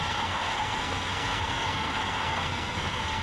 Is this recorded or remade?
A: remade